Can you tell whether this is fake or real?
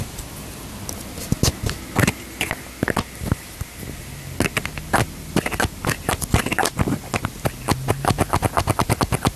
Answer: real